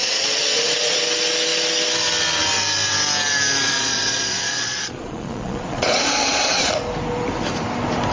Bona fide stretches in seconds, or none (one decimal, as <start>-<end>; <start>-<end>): 1.0-3.6; 6.7-8.1